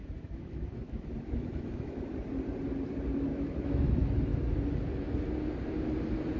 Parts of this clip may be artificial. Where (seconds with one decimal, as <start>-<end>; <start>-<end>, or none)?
0.0-2.0; 3.3-3.9